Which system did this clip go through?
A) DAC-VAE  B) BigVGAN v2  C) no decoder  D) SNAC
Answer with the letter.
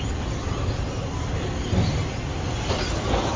C